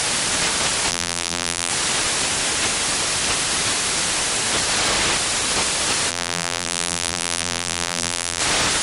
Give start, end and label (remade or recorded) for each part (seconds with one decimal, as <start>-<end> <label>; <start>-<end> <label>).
0.0-0.9 recorded; 0.9-1.7 remade; 1.7-6.1 recorded; 6.1-8.4 remade; 8.4-8.8 recorded